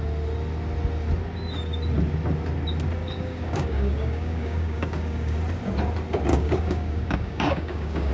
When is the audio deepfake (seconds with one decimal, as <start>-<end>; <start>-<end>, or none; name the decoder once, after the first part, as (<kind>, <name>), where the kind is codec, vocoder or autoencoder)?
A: 3.0-5.4 (codec, DAC); 6.3-8.1